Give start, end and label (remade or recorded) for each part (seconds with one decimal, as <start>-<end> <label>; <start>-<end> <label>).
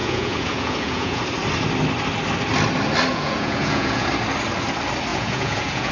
0.0-1.2 remade; 1.2-3.1 recorded; 3.1-4.1 remade; 4.1-5.1 recorded; 5.1-5.9 remade